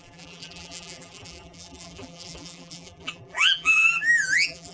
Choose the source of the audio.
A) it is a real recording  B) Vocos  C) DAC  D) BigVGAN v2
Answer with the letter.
D